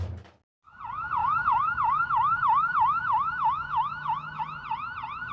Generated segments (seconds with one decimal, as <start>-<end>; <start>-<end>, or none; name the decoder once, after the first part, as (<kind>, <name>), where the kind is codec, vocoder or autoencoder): 1.2-4.4 (autoencoder, DAC-VAE)

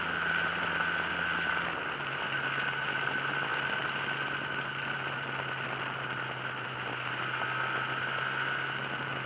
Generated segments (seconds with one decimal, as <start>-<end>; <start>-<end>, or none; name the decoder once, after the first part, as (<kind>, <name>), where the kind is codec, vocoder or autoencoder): none

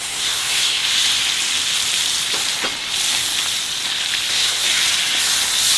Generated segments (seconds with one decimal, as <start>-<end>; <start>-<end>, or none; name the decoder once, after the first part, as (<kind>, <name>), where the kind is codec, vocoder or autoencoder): 0.0-0.8 (codec, SNAC); 4.3-4.7

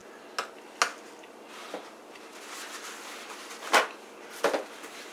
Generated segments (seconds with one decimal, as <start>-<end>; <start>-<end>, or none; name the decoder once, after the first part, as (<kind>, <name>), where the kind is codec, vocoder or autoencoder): none